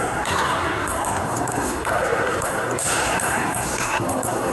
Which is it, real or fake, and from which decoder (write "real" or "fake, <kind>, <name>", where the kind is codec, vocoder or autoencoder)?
fake, codec, SNAC